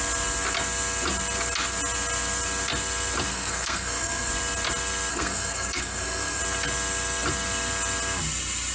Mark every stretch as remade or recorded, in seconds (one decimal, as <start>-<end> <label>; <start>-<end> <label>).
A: 0.0-3.3 recorded; 3.3-4.3 remade; 4.3-5.1 recorded; 5.1-6.4 remade; 6.4-8.7 recorded